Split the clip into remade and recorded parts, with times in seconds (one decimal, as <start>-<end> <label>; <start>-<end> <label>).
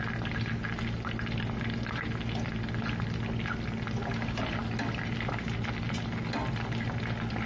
0.0-7.5 recorded